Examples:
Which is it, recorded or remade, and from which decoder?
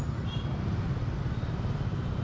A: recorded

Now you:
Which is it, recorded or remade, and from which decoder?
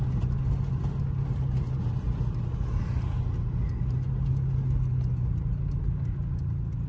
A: recorded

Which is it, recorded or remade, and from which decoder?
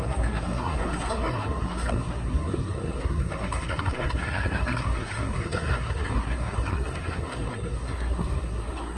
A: remade, codec, SNAC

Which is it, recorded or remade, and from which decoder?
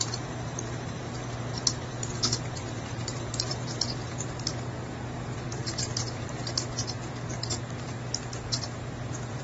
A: remade, vocoder, BigVGAN v2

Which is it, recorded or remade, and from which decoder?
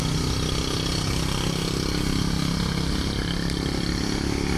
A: recorded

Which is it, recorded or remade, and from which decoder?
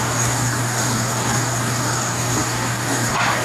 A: remade, codec, DAC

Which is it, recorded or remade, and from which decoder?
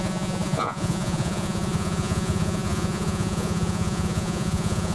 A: remade, vocoder, Vocos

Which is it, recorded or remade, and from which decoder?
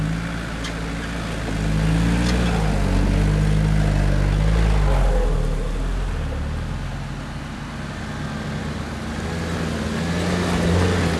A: recorded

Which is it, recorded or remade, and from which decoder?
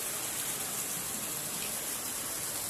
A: recorded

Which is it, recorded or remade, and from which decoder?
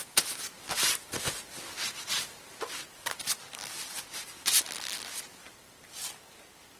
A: recorded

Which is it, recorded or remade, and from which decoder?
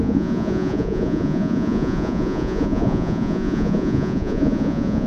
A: remade, vocoder, Vocos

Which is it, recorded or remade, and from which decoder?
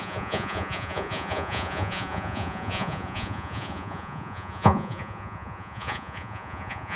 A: remade, vocoder, Vocos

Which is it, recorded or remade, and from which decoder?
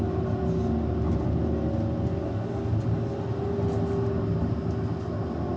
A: recorded